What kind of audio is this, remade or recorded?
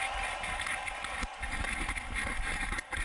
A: recorded